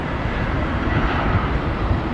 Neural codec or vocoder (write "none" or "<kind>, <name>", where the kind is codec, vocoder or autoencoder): vocoder, BigVGAN v2